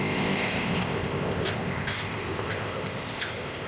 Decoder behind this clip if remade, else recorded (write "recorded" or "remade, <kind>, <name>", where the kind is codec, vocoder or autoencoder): remade, codec, ZipCodec